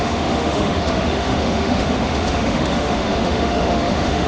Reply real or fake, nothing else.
fake